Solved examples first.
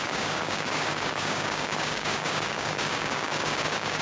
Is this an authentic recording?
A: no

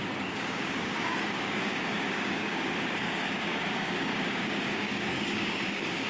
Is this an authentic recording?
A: no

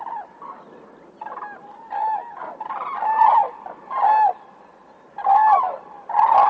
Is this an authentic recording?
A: yes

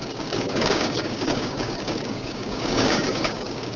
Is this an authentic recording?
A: no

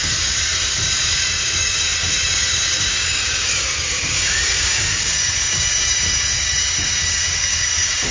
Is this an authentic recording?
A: no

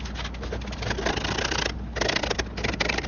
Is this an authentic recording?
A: yes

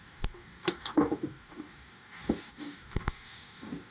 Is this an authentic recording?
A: no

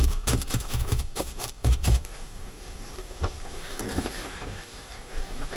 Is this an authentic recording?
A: no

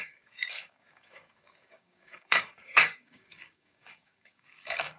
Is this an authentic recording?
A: no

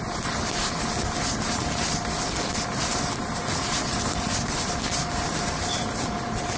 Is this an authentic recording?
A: yes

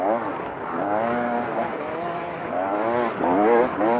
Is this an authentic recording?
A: no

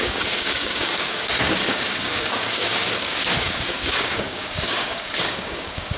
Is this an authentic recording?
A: no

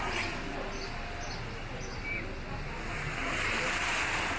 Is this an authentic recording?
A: yes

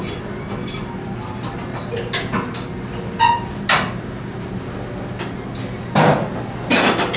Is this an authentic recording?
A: yes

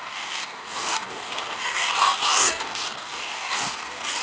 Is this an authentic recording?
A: no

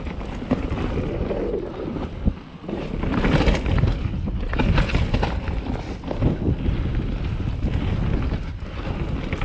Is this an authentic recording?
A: yes